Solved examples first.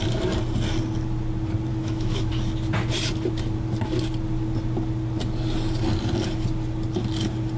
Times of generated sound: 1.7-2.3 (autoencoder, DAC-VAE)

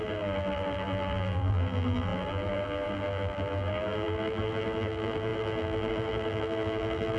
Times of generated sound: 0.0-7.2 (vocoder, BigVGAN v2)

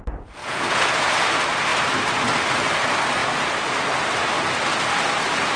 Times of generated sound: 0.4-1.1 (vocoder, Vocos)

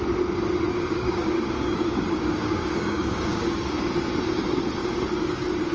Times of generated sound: 0.7-3.7 (codec, DAC); 4.8-5.7

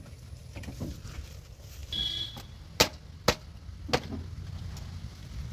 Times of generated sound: none